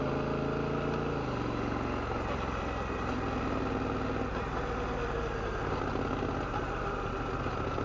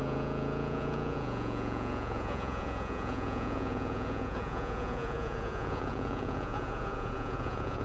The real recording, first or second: first